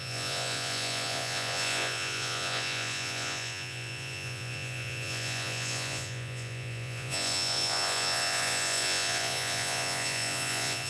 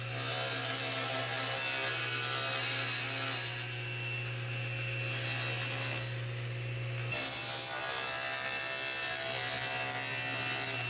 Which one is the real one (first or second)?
second